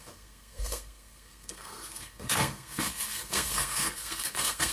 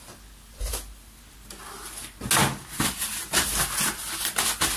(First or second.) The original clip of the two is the second